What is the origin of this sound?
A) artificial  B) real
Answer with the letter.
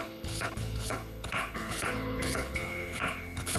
A